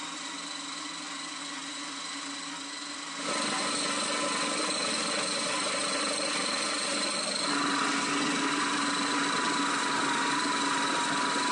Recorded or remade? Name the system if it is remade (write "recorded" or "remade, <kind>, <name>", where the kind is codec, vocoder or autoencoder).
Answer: recorded